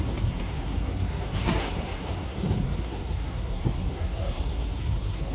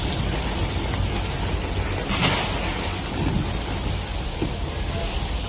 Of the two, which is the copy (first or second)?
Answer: first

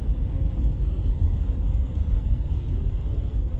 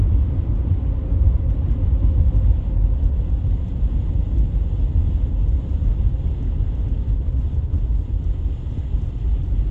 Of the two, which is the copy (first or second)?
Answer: first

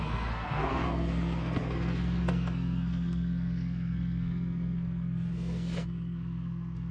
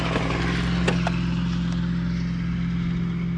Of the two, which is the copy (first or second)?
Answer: first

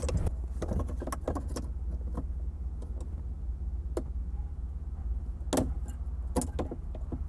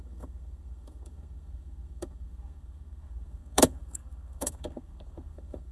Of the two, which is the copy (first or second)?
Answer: second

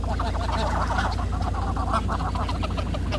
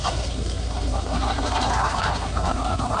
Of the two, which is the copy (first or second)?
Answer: second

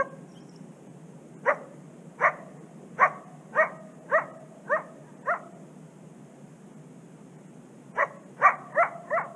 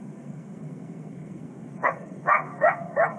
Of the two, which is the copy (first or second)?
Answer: second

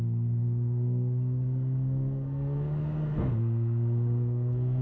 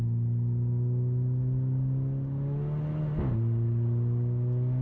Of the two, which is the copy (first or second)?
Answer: first